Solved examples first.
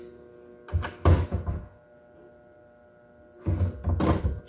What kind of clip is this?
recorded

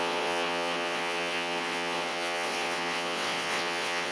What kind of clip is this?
remade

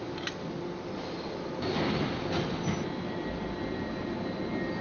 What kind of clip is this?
recorded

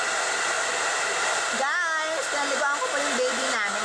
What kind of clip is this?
recorded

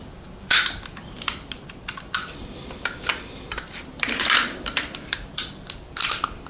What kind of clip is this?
remade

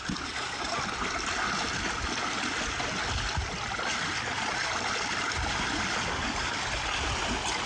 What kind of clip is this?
recorded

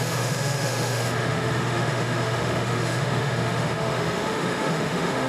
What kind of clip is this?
remade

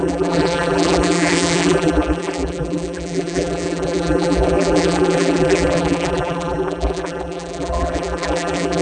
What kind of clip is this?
remade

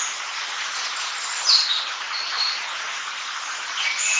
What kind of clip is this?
remade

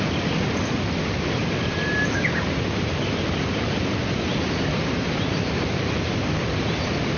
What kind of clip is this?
recorded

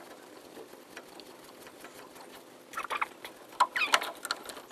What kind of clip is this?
recorded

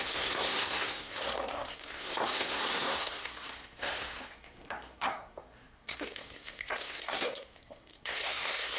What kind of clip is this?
remade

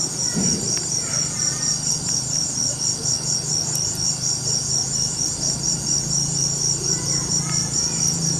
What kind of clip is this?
recorded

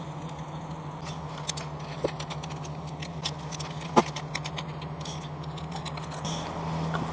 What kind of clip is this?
recorded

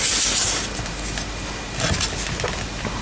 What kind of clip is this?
recorded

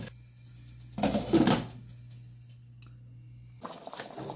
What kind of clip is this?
recorded